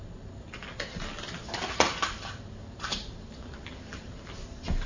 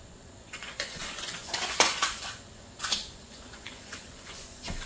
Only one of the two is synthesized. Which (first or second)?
second